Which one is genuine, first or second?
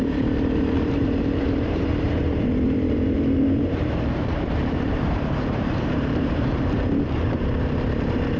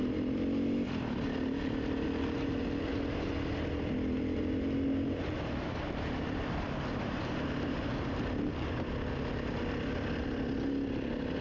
second